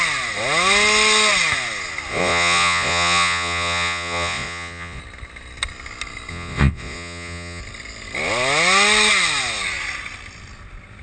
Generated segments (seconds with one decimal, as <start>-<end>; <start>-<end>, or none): 2.1-5.0; 6.3-7.6